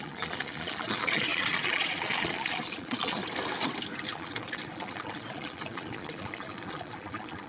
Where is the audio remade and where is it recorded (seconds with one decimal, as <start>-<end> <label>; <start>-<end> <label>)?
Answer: 0.0-3.2 remade; 3.2-4.1 recorded; 4.1-7.5 remade